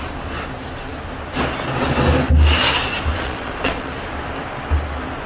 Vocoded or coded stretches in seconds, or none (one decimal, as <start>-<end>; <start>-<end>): 3.1-3.9